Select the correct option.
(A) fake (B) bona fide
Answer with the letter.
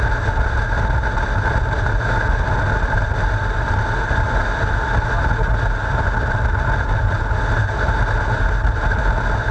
B